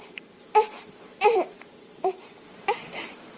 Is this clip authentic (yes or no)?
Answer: no